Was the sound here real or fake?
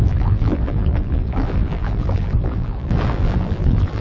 fake